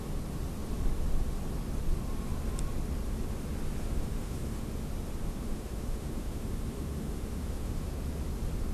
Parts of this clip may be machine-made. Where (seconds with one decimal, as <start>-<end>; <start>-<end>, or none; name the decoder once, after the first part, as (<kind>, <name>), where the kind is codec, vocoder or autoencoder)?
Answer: 3.8-4.7 (autoencoder, DAC-VAE); 5.2-8.0